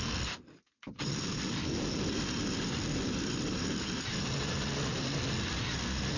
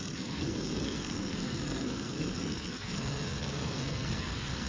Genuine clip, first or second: first